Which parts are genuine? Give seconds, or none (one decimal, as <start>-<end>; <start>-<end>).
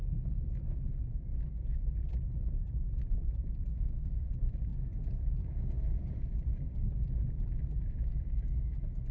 0.0-3.7; 4.3-9.1